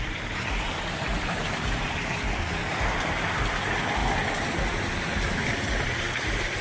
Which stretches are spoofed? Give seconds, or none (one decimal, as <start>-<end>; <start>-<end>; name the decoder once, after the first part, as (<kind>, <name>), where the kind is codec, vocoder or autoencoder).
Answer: none